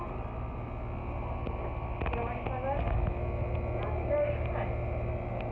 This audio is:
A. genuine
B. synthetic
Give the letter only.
A